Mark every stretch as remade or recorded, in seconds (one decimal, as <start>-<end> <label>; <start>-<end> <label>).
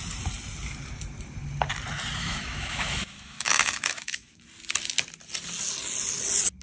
0.0-2.2 recorded; 2.2-4.4 remade; 4.4-6.6 recorded